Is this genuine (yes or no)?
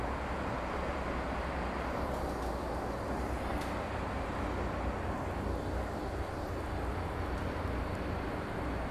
yes